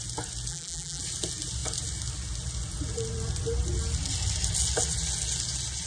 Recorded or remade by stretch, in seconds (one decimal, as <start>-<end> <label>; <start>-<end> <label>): 0.0-0.5 recorded; 0.5-1.0 remade; 1.0-5.9 recorded